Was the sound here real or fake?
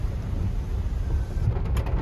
real